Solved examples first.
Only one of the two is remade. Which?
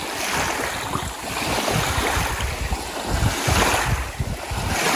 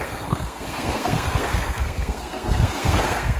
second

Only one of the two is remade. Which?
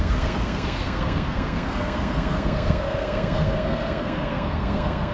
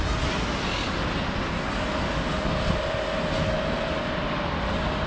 first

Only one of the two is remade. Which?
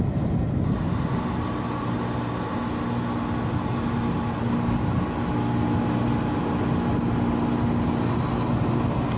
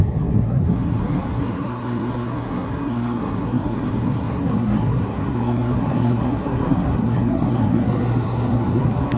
second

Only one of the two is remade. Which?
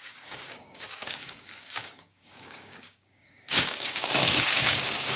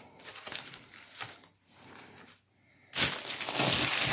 first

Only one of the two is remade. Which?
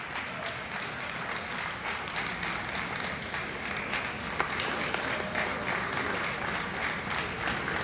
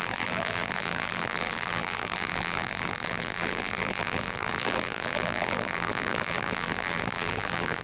second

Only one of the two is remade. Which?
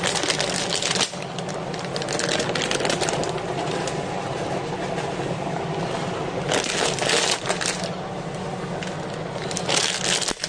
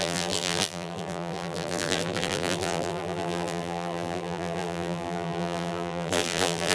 second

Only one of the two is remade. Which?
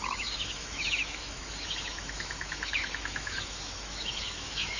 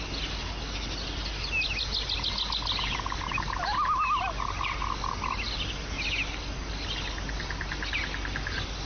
first